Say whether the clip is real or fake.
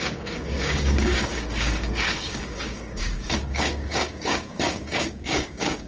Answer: fake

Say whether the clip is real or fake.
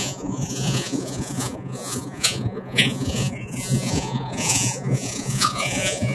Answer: fake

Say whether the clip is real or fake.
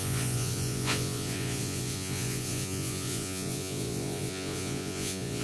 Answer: fake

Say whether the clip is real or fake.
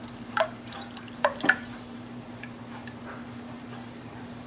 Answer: fake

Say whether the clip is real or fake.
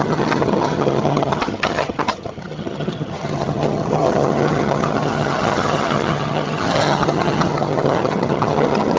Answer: fake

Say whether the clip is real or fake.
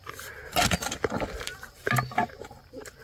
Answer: real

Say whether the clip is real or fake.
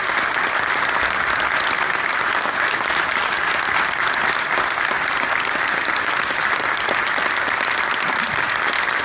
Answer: real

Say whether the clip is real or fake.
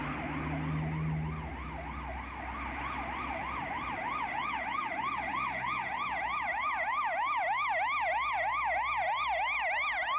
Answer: real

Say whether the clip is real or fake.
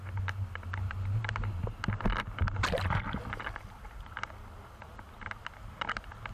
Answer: real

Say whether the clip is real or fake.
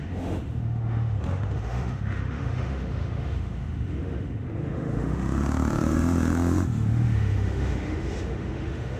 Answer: fake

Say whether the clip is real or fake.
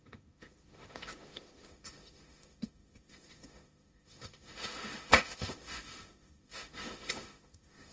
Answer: fake